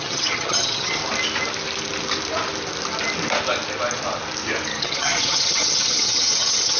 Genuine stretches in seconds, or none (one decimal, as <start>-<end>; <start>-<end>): 1.0-4.8